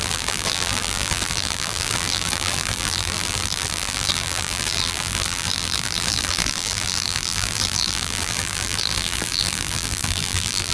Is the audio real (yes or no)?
no